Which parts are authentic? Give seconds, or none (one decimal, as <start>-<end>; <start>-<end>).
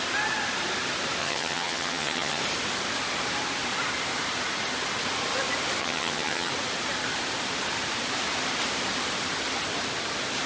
0.0-1.2; 2.4-5.8; 6.5-10.5